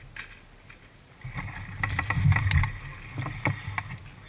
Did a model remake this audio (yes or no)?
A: no